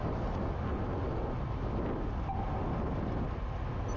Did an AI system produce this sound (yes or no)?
no